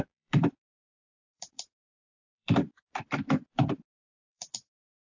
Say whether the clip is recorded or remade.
remade